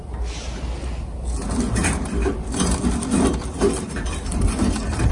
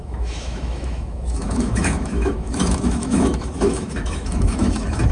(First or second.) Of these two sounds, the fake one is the second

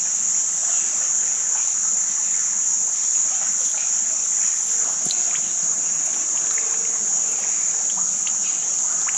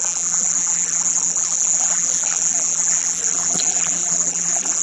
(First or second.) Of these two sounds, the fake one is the second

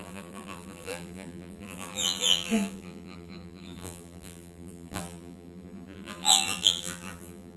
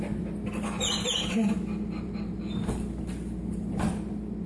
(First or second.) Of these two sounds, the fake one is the first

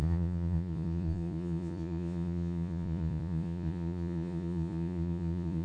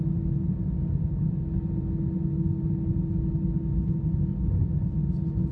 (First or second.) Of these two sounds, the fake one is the first